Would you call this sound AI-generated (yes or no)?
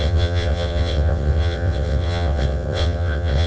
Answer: yes